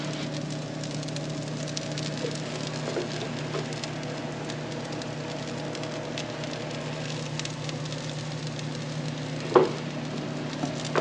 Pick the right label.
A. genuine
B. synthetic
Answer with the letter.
A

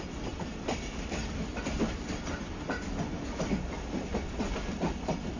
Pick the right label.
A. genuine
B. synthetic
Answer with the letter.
A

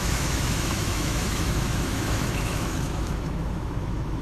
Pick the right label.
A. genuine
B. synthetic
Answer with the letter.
B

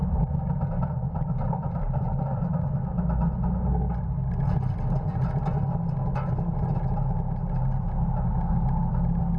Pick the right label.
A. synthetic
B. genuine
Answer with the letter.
B